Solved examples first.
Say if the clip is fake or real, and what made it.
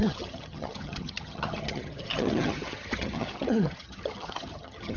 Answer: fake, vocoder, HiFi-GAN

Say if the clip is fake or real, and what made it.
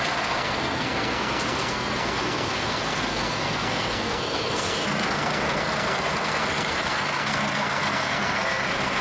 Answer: fake, codec, SNAC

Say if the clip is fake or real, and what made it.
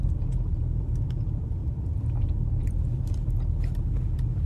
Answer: fake, vocoder, BigVGAN v2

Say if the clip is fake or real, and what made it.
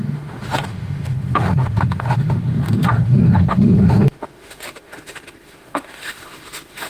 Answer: fake, autoencoder, DAC-VAE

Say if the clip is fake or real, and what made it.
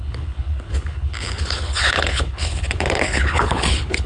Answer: fake, codec, HILCodec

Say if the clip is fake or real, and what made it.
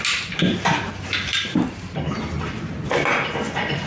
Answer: real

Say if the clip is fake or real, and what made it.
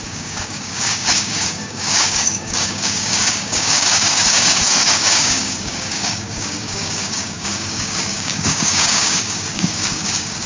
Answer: fake, codec, DAC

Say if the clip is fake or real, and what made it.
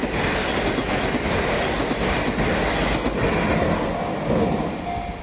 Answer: real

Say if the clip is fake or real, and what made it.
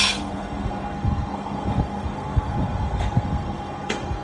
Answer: fake, codec, SNAC